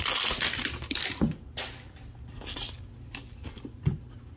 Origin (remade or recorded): recorded